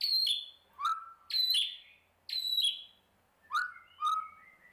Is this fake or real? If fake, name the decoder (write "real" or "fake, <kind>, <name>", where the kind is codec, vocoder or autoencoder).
real